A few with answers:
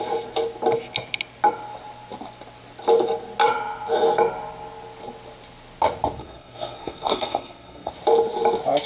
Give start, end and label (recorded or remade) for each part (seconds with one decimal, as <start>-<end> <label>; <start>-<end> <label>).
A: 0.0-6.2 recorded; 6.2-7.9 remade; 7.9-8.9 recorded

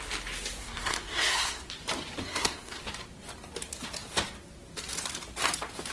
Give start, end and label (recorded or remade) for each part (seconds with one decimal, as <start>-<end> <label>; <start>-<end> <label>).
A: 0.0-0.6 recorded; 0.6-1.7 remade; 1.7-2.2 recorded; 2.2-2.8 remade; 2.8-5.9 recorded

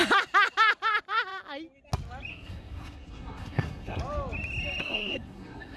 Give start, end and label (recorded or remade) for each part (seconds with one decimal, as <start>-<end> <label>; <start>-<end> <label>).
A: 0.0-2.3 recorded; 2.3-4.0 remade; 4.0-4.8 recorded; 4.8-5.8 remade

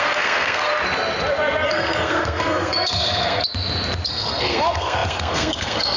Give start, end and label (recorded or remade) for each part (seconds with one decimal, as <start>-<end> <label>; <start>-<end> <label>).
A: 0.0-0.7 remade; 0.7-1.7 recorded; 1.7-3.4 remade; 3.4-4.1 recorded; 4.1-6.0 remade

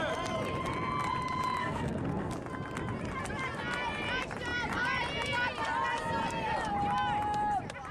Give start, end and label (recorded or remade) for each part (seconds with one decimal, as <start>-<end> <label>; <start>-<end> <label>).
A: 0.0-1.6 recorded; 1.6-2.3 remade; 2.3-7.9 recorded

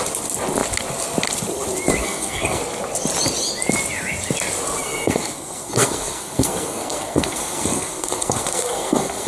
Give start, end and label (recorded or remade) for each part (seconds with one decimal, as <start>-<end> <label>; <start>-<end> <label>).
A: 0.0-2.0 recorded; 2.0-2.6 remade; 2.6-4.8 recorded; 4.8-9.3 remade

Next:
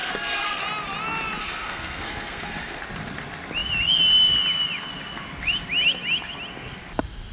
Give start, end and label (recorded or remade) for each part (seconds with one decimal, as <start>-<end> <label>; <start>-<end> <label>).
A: 0.0-0.6 remade; 0.6-1.4 recorded; 1.4-2.8 remade; 2.8-7.3 recorded

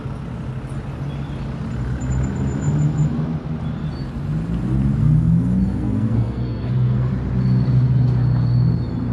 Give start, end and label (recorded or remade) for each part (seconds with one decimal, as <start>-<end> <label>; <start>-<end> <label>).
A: 0.0-5.0 recorded; 5.0-7.1 remade; 7.1-9.1 recorded